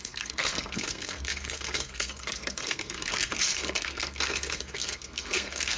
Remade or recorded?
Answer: remade